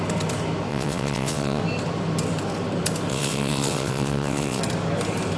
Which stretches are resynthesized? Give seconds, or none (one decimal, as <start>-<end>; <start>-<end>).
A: 0.7-1.6; 3.1-4.6